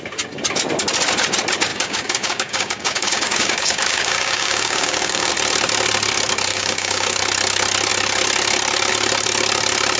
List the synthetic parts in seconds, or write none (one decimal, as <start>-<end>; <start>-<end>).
1.7-5.3; 6.5-7.2